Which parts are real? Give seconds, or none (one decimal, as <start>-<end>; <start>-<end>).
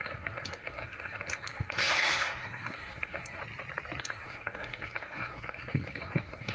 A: 3.4-4.0